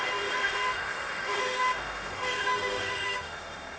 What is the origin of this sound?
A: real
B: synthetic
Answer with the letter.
B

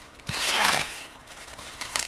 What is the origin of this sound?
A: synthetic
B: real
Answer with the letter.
A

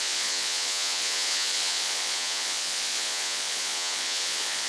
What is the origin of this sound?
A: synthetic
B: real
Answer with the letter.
A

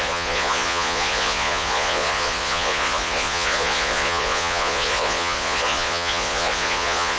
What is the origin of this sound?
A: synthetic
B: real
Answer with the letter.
A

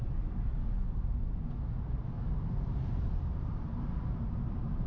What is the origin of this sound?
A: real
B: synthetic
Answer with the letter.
A